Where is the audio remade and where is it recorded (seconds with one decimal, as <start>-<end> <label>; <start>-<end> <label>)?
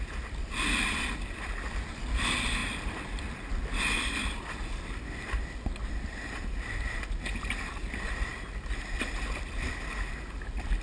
0.0-10.8 recorded